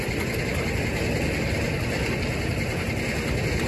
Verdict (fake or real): real